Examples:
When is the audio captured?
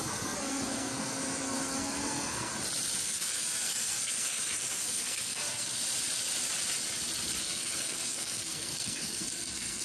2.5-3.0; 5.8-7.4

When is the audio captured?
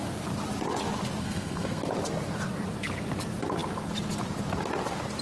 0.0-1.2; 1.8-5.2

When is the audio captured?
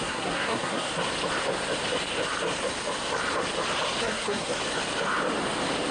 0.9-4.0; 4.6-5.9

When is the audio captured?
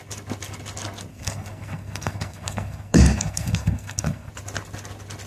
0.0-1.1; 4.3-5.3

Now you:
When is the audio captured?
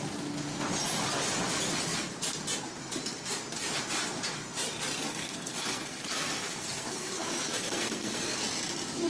0.0-5.1; 8.4-9.1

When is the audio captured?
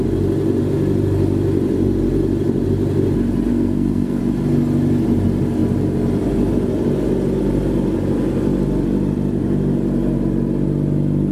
0.0-3.5; 4.2-11.3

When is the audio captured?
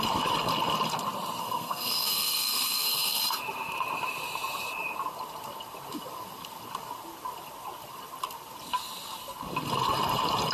0.0-1.4; 3.2-10.5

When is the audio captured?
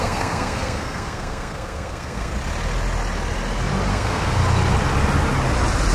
2.3-3.9; 4.4-5.9